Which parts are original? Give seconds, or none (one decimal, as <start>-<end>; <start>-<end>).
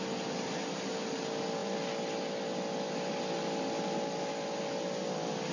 0.0-5.5